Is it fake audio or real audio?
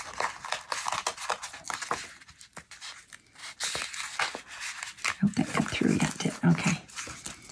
real